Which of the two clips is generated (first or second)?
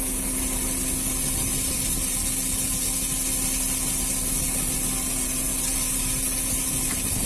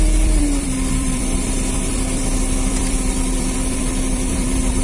second